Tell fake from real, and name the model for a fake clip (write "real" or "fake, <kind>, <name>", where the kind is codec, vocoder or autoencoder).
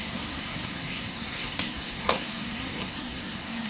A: fake, codec, SNAC